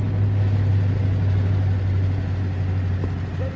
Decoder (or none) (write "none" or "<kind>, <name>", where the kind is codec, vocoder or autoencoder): none